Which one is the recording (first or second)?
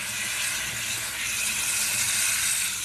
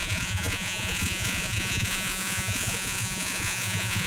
first